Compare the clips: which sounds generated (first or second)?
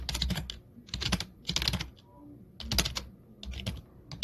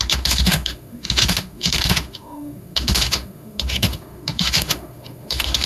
second